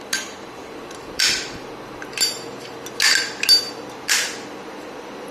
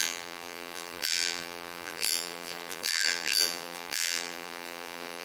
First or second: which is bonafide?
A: first